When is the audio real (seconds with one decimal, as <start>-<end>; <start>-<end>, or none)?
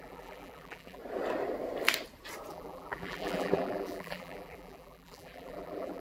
1.0-2.5